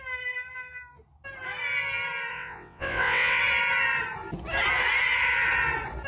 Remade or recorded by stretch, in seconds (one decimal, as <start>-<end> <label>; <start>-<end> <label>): 0.0-2.3 recorded; 2.3-3.4 remade; 3.4-6.1 recorded